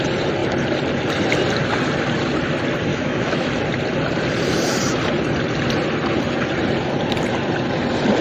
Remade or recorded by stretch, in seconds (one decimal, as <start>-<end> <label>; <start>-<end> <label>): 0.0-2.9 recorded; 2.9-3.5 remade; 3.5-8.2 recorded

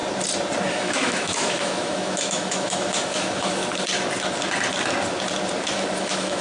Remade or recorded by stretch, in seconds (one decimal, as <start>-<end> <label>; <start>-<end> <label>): 0.0-0.7 recorded; 0.7-3.6 remade; 3.6-6.0 recorded; 6.0-6.4 remade

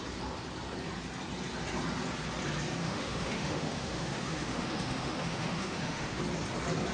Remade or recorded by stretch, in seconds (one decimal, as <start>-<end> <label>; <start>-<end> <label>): 0.0-2.8 recorded; 2.8-6.2 remade; 6.2-6.9 recorded

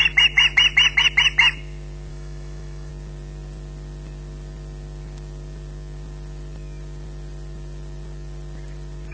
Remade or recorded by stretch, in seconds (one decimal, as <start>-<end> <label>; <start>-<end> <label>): 0.0-2.1 recorded; 2.1-2.9 remade; 2.9-9.1 recorded